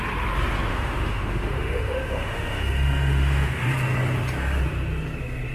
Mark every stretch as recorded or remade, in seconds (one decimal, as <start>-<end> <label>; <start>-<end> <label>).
0.0-0.7 recorded; 0.7-3.7 remade; 3.7-5.5 recorded